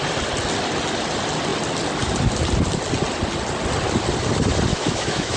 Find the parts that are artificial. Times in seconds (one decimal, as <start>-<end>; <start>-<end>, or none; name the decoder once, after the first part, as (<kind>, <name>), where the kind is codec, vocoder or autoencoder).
4.7-5.4 (autoencoder, DAC-VAE)